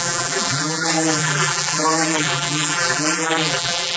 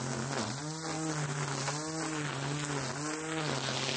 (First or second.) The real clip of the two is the second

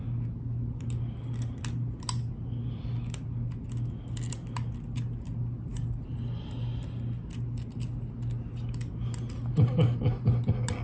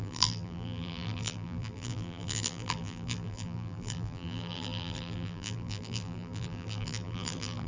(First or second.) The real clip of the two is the first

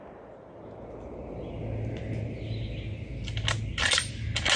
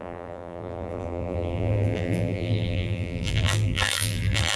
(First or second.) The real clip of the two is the first